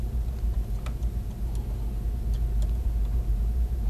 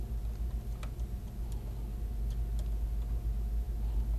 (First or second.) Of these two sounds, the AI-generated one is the first